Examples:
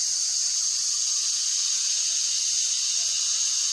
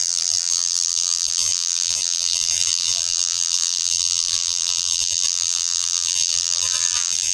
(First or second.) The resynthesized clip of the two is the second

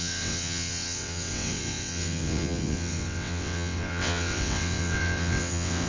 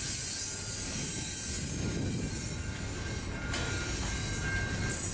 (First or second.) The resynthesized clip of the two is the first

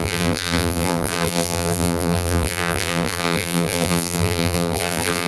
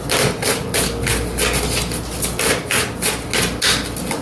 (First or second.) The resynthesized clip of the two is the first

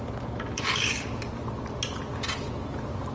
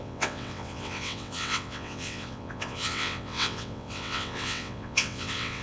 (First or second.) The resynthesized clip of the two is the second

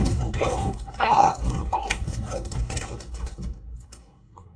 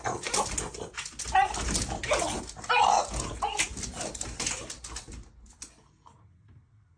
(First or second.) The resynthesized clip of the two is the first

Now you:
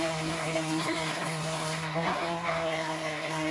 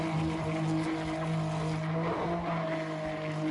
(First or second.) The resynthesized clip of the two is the first